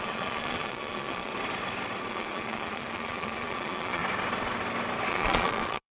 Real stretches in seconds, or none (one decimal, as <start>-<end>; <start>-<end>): 1.3-2.1; 4.0-5.1